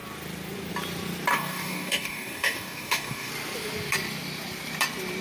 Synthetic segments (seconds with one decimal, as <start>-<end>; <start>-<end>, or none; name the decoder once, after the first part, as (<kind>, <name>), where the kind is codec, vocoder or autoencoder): 1.3-3.3 (codec, DAC)